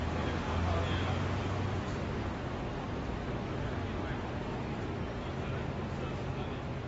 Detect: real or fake real